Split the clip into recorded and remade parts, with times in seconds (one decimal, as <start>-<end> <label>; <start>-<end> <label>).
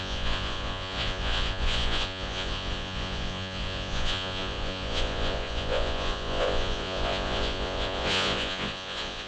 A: 0.0-9.3 remade